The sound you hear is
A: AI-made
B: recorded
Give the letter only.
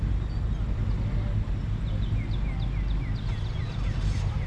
B